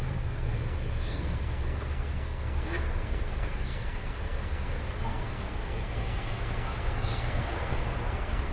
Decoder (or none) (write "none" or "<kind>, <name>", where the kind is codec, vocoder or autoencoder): codec, SNAC